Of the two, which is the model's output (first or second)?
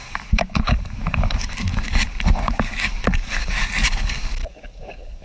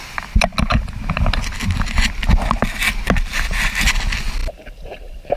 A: first